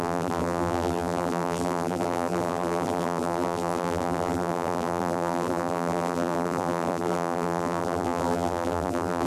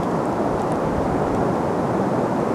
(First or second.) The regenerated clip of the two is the first